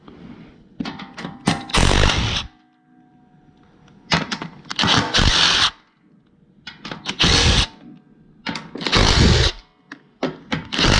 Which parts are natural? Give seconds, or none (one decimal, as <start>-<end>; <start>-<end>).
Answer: 0.0-11.0